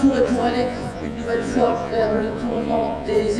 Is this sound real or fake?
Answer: fake